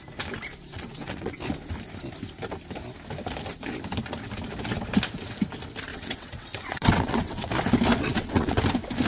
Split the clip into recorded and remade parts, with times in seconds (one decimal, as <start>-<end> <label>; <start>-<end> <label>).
0.0-0.7 recorded; 0.7-1.4 remade; 1.4-5.9 recorded; 5.9-7.5 remade; 7.5-7.9 recorded; 7.9-8.6 remade; 8.6-9.1 recorded